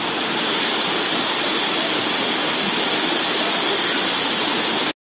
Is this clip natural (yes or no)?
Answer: yes